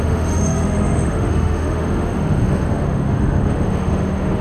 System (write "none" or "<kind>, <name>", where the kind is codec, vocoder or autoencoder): autoencoder, DAC-VAE